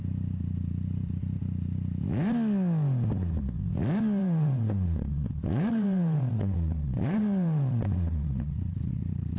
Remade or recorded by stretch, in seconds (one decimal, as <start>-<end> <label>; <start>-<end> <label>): 0.0-4.2 recorded; 4.2-9.4 remade